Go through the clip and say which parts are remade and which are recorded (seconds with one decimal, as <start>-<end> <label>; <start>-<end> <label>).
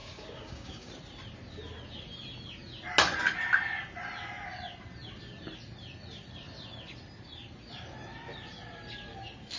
0.0-0.9 remade; 0.9-9.6 recorded